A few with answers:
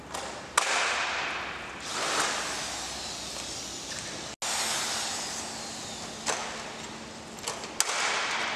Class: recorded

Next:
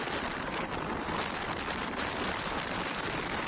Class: remade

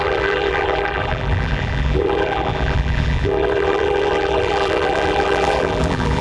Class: remade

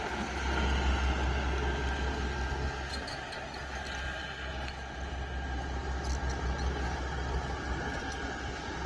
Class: recorded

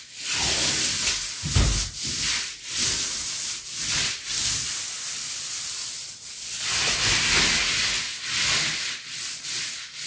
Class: recorded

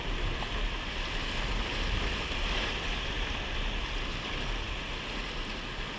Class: recorded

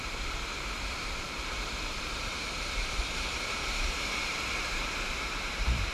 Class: remade